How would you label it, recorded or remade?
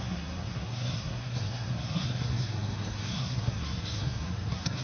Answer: remade